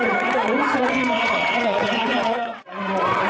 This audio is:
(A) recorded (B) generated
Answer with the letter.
B